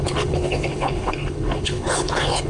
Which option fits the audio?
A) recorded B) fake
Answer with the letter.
B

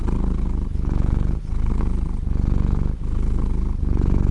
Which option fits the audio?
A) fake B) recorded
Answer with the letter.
B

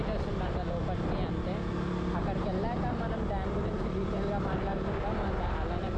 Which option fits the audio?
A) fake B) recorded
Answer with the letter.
B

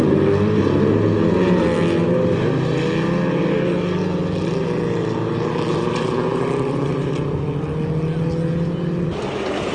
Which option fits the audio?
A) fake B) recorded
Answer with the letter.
B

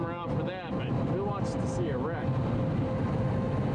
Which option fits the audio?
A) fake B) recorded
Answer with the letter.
B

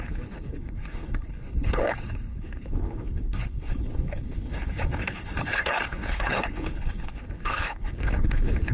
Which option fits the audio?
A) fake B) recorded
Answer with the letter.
A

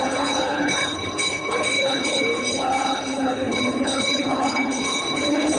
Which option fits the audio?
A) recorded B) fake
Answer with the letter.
B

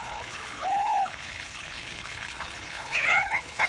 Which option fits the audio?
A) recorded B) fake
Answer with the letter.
B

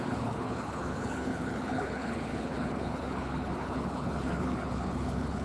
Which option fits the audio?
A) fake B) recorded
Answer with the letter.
A